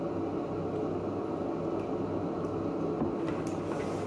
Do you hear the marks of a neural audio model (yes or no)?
no